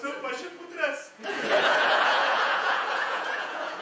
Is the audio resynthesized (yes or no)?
yes